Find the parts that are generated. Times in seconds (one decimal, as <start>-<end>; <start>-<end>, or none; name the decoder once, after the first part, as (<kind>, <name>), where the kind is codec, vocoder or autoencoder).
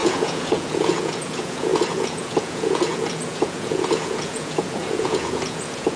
0.0-6.0 (vocoder, Vocos)